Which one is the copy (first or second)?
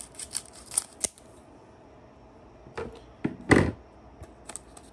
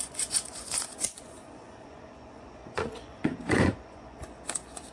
second